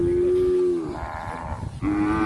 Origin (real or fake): real